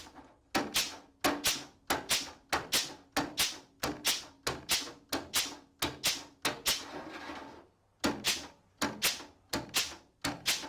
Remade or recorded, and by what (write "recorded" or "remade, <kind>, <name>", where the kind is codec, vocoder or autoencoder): recorded